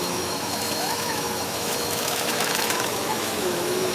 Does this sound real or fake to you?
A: fake